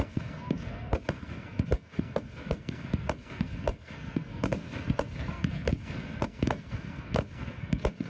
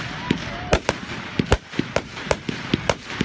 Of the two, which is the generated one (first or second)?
first